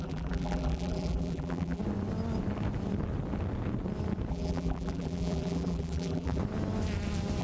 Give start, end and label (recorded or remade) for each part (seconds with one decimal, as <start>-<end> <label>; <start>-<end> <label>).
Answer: 0.0-1.8 remade; 1.8-4.3 recorded; 4.3-6.4 remade; 6.4-7.4 recorded